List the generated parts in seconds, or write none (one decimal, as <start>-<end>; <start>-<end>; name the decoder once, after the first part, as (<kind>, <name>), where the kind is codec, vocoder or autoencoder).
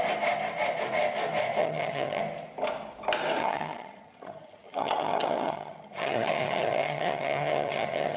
1.6-2.2 (vocoder, HiFi-GAN); 3.4-8.2